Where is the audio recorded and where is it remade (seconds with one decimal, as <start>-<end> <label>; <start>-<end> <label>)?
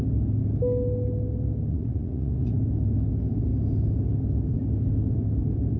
0.0-1.7 recorded; 1.7-2.6 remade; 2.6-5.8 recorded